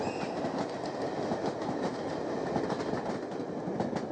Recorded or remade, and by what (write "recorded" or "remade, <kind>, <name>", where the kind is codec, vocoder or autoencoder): recorded